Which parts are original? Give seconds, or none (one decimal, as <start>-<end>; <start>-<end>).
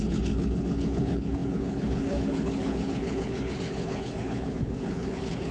none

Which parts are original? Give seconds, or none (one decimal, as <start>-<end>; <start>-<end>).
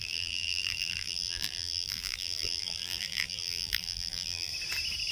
4.5-5.1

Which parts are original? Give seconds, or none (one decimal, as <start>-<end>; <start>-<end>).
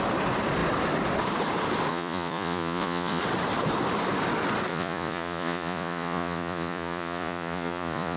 0.0-1.9; 3.2-4.7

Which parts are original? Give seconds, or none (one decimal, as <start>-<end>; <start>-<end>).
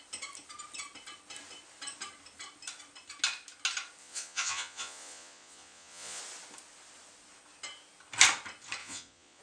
0.0-4.0; 6.2-8.8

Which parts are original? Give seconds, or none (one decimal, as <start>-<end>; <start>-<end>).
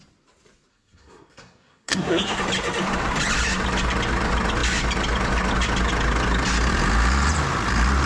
0.0-0.7; 2.4-8.1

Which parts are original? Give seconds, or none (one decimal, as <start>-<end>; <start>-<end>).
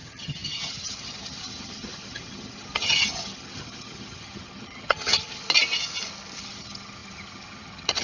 5.4-6.4